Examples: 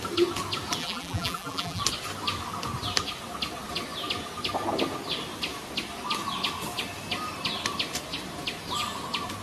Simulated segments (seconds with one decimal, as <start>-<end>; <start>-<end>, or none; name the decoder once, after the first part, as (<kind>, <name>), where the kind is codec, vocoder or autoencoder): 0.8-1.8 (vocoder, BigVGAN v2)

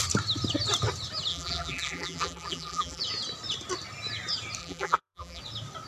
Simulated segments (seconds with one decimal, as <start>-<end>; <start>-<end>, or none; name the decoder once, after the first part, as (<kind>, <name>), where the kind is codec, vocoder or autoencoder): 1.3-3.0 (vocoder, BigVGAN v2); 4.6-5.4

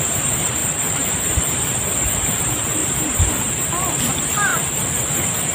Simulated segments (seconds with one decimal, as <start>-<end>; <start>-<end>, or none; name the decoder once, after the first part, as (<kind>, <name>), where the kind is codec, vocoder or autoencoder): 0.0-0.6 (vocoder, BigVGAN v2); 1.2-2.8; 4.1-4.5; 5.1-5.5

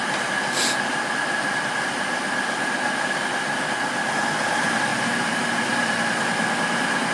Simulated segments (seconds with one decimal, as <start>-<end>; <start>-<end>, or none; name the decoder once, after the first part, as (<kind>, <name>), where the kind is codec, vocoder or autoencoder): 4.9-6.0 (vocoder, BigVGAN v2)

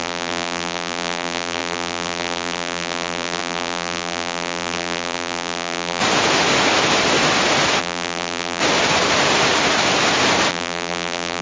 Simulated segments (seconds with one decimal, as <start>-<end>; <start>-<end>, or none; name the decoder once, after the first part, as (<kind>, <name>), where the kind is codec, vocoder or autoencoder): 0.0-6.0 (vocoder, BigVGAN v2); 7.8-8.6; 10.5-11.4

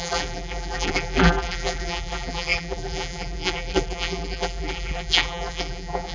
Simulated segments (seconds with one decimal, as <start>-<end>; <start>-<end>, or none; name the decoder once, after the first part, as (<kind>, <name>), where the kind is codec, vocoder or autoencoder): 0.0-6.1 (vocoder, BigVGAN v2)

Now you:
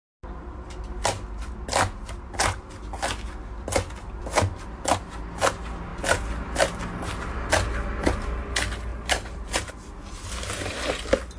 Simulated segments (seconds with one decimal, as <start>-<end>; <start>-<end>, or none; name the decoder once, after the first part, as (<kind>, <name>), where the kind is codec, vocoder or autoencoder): 8.9-9.7 (vocoder, BigVGAN v2)

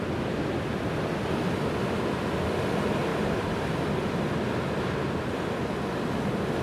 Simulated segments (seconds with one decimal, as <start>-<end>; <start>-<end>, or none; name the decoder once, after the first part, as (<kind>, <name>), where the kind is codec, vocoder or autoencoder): 3.1-3.8 (vocoder, BigVGAN v2)